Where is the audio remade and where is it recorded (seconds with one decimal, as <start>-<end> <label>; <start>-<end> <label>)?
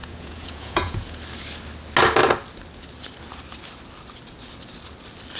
0.0-1.2 remade; 1.2-5.4 recorded